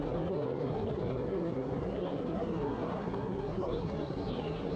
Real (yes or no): no